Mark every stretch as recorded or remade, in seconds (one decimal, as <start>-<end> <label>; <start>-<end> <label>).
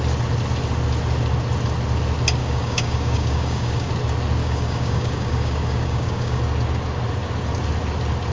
0.0-2.4 recorded; 2.4-3.9 remade; 3.9-4.4 recorded; 4.4-6.4 remade; 6.4-8.3 recorded